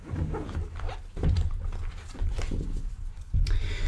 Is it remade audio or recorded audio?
remade